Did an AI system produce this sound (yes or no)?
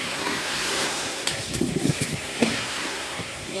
yes